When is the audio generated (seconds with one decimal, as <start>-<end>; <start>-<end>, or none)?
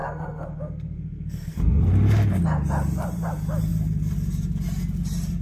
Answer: 0.0-1.8